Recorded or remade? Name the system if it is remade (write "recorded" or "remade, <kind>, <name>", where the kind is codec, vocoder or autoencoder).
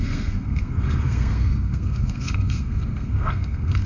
remade, codec, SNAC